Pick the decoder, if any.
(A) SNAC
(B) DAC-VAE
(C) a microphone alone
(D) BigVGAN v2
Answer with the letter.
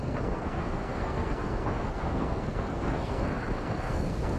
A